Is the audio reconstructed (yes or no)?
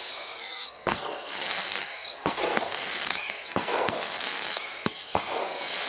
yes